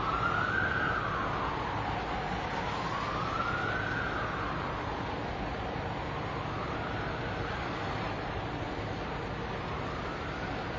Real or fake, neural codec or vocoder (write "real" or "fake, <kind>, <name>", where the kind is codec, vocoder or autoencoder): real